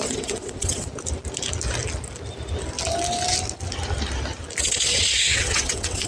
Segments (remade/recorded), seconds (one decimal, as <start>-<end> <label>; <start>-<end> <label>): 0.0-0.9 remade; 0.9-4.6 recorded; 4.6-6.1 remade